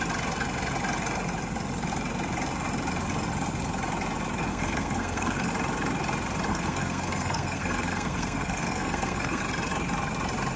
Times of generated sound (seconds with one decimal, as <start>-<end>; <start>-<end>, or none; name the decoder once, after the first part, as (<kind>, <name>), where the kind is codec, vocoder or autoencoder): 4.5-5.5 (codec, SNAC); 6.5-9.4